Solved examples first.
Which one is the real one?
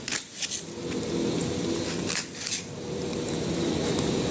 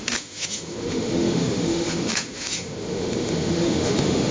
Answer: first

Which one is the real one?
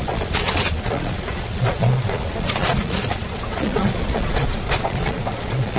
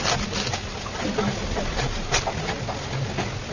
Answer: second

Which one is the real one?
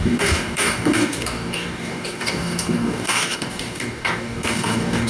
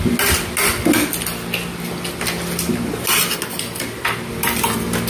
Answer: second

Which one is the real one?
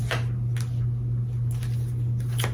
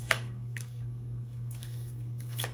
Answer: first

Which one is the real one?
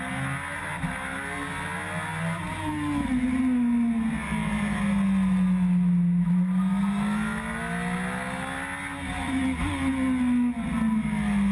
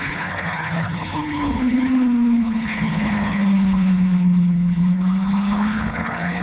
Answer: first